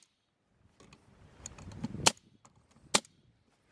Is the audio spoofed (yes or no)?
no